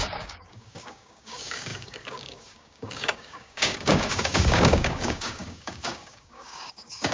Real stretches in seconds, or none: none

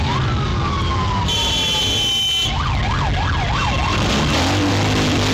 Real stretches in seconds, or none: 0.0-5.3

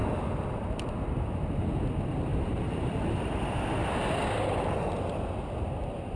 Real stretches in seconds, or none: 0.9-2.3; 3.5-6.2

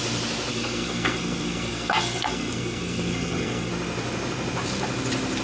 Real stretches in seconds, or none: 0.0-0.5; 3.7-5.4